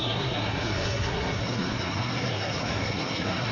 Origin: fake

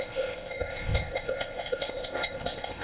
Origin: fake